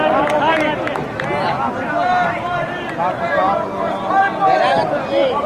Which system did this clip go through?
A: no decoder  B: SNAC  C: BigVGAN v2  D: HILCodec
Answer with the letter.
A